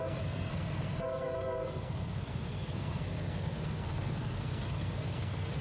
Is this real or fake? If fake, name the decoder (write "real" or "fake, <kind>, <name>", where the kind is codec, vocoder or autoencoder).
fake, codec, SNAC